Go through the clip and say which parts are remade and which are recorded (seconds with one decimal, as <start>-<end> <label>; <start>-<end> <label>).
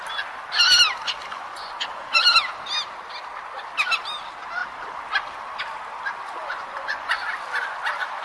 0.0-1.3 recorded; 1.3-2.2 remade; 2.2-6.4 recorded; 6.4-7.1 remade; 7.1-8.2 recorded